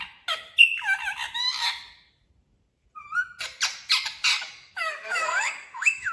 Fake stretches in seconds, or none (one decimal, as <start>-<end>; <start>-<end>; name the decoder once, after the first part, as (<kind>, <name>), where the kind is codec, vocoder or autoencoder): 4.3-6.1 (codec, DAC)